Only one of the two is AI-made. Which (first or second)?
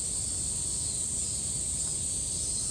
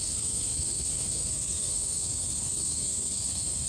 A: second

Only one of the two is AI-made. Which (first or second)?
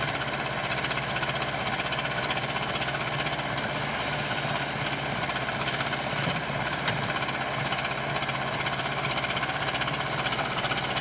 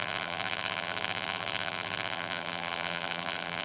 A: second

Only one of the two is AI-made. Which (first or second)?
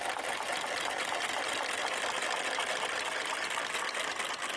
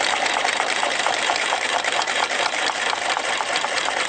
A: second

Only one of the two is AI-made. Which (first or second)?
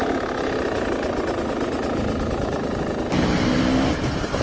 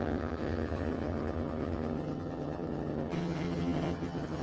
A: second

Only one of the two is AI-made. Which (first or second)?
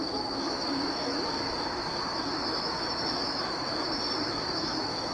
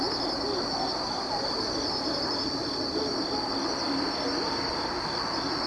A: first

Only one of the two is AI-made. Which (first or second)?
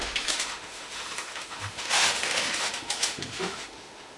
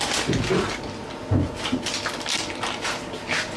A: first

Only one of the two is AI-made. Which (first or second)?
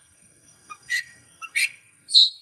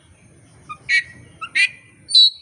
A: first